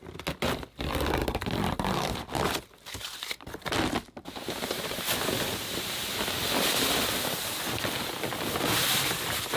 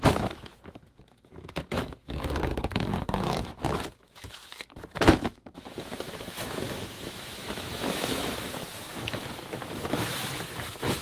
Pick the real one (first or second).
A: first